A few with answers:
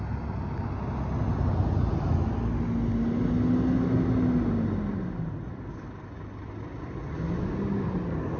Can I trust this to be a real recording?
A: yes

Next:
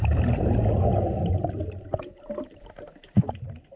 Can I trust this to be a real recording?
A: yes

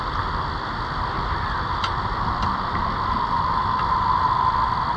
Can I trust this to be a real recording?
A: yes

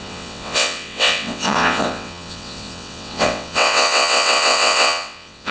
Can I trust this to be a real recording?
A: no